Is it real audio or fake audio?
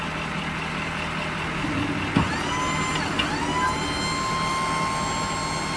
real